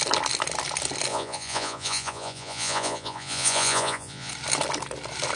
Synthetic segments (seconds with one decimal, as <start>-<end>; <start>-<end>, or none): 1.1-4.3

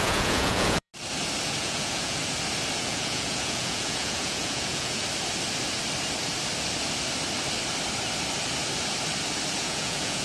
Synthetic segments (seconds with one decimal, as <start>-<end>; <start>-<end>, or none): 0.0-0.9; 1.6-2.2; 2.8-5.0; 9.6-10.2

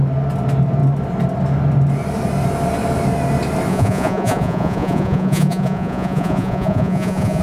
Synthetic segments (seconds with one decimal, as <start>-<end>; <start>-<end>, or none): 3.7-7.4

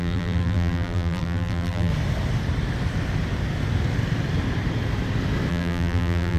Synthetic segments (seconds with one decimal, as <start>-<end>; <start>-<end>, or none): 0.0-1.9; 5.5-6.4

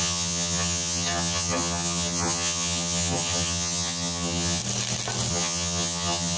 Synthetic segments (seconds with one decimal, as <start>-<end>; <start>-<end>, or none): 0.0-4.6; 5.3-6.4

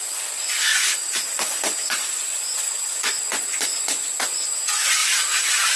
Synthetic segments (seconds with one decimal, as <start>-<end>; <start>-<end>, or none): 0.0-5.0

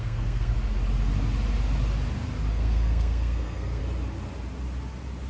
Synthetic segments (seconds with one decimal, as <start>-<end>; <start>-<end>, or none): 0.0-0.5; 2.5-3.8

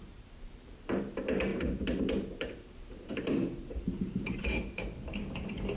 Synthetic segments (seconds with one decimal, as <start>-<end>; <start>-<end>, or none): 0.0-5.8